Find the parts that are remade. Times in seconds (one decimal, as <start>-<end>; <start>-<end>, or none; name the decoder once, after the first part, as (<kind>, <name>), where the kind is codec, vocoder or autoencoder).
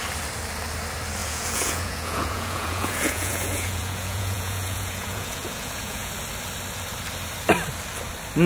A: 1.2-6.1 (vocoder, Vocos)